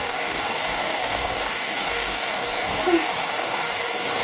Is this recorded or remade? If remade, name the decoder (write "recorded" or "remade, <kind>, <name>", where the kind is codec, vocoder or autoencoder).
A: remade, codec, DAC